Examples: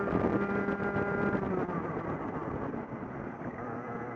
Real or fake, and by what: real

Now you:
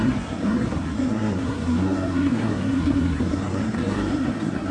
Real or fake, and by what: fake, codec, SNAC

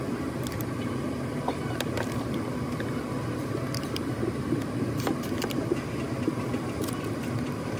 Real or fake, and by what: real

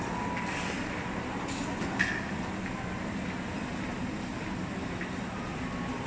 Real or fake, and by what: real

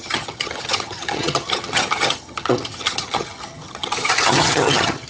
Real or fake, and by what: fake, vocoder, HiFi-GAN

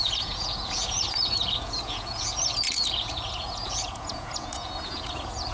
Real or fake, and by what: fake, vocoder, Vocos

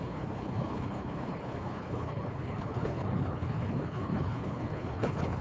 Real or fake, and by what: fake, codec, HILCodec